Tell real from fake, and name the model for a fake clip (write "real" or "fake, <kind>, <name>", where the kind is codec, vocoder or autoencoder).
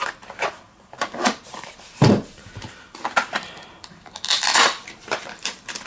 fake, vocoder, BigVGAN v2